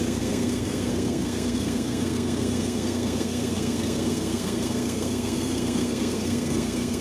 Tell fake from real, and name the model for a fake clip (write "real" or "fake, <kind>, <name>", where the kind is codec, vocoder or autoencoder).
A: fake, codec, SNAC